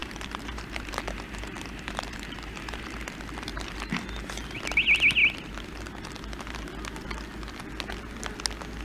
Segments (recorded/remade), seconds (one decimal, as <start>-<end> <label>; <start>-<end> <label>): 0.0-3.0 remade; 3.0-3.5 recorded; 3.5-4.0 remade; 4.0-5.2 recorded; 5.2-6.1 remade; 6.1-8.8 recorded